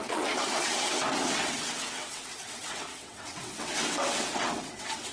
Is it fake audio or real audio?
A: fake